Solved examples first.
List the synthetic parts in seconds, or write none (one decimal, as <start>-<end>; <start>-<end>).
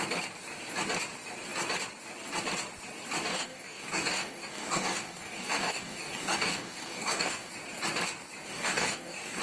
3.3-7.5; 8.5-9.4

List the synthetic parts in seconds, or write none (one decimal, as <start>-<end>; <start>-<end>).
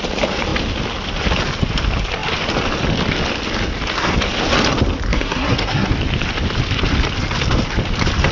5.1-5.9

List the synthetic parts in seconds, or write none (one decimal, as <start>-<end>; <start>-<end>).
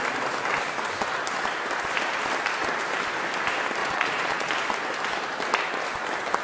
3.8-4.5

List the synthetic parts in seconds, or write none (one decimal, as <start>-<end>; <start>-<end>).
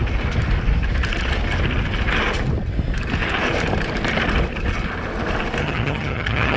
5.6-6.6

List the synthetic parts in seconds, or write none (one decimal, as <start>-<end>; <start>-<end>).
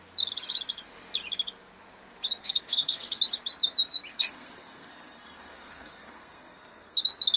2.4-3.2; 4.1-7.0